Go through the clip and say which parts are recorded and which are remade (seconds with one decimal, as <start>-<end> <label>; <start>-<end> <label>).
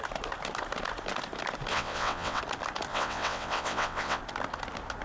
0.0-1.7 recorded; 1.7-2.4 remade; 2.4-2.9 recorded; 2.9-4.2 remade; 4.2-5.0 recorded